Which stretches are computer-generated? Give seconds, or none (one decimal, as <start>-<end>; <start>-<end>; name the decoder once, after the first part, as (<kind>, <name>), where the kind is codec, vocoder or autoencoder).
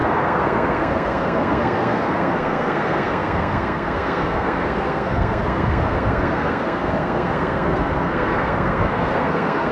0.0-9.7 (codec, SNAC)